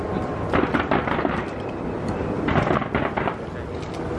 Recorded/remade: recorded